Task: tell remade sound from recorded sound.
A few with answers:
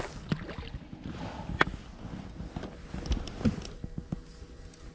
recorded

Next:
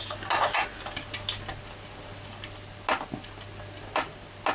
recorded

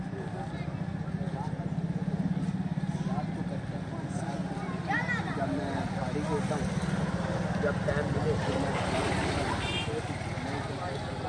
recorded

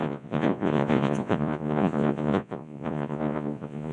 remade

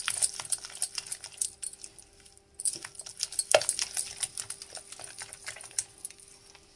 recorded